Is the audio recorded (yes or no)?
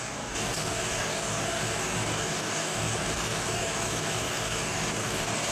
no